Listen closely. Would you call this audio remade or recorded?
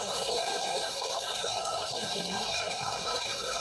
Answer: remade